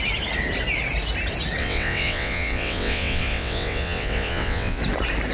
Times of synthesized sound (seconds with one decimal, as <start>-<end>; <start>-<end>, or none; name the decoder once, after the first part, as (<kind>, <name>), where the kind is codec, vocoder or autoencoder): 1.6-4.8 (vocoder, WaveNeXt)